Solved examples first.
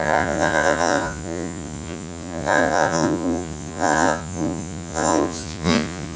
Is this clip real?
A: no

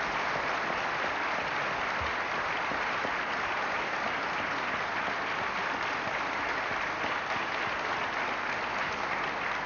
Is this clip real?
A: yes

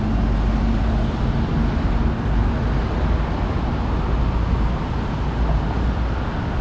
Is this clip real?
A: yes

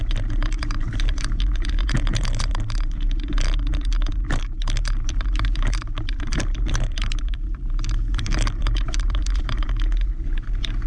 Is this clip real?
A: no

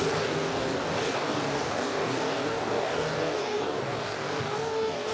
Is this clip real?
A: no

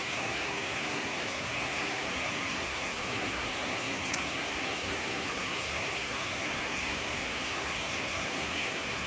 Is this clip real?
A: no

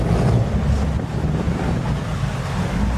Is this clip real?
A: yes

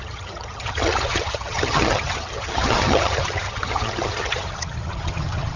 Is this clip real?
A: no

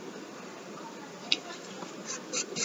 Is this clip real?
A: no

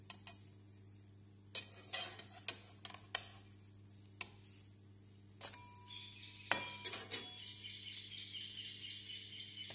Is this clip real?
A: yes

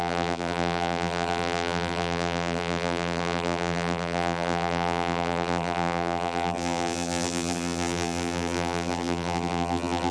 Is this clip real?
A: no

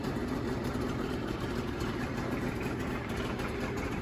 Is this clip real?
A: no